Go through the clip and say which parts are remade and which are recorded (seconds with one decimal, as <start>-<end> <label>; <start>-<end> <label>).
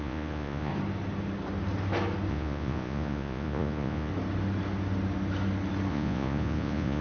0.0-0.7 remade; 0.7-2.3 recorded; 2.3-4.1 remade; 4.1-5.9 recorded; 5.9-7.0 remade